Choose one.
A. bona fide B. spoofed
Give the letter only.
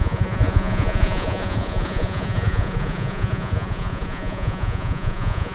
B